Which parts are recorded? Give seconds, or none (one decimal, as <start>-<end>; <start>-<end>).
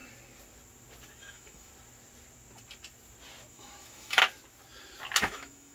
0.0-1.2; 1.7-3.5; 4.2-5.2